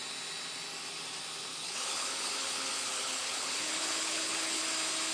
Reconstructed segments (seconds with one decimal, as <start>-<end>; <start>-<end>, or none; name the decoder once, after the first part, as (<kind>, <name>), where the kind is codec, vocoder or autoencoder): 1.5-4.6 (codec, HILCodec)